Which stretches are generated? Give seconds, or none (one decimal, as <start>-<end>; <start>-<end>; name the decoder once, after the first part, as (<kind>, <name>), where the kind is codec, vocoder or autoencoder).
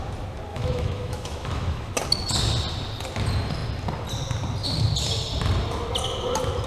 0.5-1.9 (autoencoder, DAC-VAE)